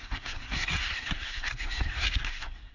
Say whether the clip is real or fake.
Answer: fake